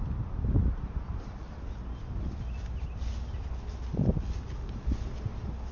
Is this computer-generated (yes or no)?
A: no